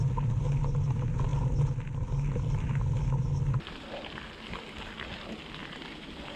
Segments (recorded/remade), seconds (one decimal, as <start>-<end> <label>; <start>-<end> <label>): 0.0-6.4 recorded